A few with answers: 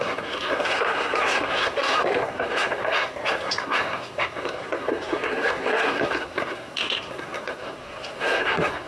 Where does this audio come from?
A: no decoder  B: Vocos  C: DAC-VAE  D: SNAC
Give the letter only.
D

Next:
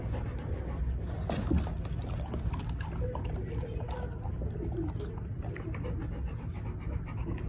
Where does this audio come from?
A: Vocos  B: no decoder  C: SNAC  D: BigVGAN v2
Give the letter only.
B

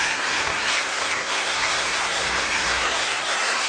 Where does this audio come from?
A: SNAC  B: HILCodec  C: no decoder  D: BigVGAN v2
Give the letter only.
A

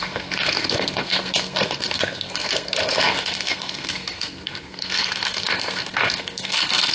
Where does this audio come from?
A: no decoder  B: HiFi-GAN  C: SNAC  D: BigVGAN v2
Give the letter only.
C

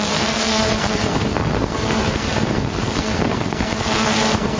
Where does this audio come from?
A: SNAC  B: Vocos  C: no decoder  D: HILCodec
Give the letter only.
A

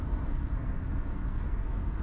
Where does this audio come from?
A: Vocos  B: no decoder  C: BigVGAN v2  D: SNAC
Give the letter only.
D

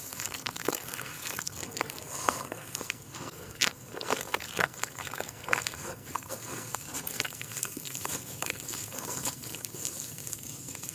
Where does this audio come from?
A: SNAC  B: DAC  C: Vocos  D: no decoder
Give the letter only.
A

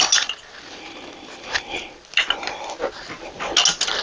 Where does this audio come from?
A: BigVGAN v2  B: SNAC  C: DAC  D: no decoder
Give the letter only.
D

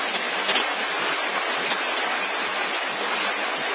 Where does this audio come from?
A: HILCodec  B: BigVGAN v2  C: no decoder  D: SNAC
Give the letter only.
C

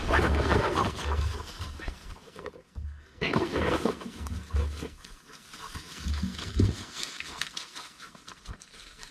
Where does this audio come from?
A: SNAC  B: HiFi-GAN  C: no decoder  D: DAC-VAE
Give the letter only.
A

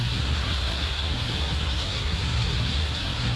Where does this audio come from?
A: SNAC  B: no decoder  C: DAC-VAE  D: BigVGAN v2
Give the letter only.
A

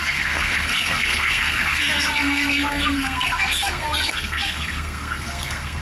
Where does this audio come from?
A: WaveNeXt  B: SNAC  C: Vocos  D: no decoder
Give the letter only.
B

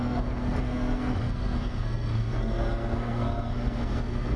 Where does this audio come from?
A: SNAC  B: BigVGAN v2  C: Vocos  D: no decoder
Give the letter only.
A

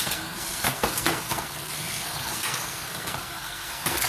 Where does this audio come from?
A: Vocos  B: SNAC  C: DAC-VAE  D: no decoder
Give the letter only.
B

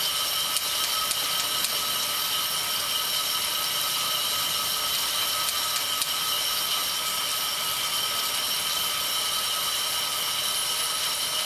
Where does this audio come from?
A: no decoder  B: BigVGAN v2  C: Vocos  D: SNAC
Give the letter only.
A